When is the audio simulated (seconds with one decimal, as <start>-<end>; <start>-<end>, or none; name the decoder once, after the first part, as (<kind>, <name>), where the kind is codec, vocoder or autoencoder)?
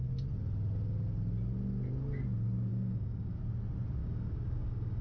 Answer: 2.7-3.4 (codec, DAC); 4.0-5.0